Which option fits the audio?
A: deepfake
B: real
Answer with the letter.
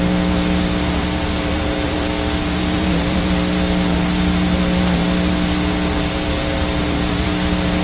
B